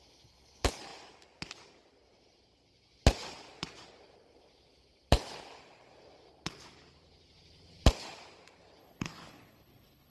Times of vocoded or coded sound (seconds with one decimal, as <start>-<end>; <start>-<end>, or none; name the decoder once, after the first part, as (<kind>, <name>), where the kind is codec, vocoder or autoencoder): 8.8-10.1 (codec, HILCodec)

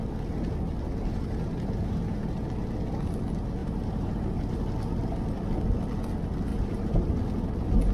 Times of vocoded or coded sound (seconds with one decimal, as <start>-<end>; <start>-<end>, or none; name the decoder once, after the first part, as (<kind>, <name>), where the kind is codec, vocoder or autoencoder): 0.9-2.4 (vocoder, BigVGAN v2); 3.6-4.4; 6.5-7.1

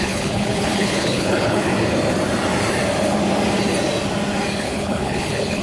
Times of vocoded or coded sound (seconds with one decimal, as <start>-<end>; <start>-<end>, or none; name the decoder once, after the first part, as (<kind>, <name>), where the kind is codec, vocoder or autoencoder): 0.0-1.7 (codec, HILCodec); 4.6-5.6

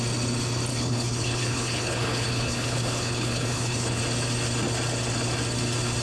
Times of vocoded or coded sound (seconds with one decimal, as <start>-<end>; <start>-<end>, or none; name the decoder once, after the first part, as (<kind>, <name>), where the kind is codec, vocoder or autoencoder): 0.7-4.0 (codec, HILCodec)

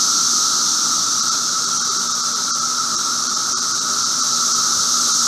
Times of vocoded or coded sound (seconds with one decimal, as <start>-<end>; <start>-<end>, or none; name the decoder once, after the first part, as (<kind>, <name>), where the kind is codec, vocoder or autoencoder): 0.7-3.9 (vocoder, BigVGAN v2)